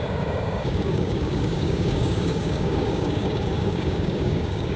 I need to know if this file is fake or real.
fake